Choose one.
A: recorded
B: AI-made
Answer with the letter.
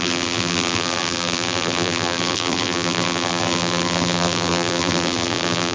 B